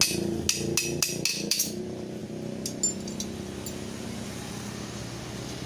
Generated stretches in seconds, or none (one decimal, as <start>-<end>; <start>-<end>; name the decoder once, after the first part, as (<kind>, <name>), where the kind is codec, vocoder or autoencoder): 1.3-1.8 (autoencoder, DAC-VAE)